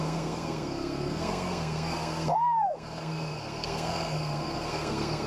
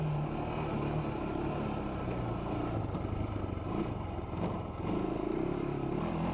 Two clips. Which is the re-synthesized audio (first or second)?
first